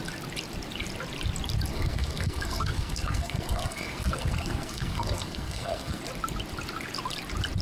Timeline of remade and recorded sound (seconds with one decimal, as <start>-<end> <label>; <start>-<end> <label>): 0.0-1.7 recorded; 1.7-6.0 remade; 6.0-7.6 recorded